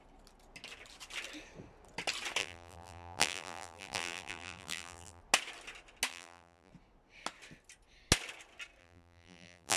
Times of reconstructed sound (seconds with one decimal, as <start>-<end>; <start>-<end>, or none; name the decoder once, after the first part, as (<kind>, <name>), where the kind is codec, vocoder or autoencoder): 2.4-5.2 (vocoder, BigVGAN v2); 6.1-6.7; 8.8-9.8